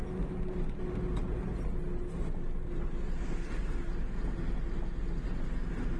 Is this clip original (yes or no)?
yes